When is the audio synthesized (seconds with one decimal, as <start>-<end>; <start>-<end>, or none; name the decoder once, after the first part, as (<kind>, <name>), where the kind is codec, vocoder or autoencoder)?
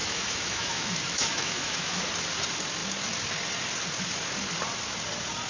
0.0-2.1 (autoencoder, DAC-VAE)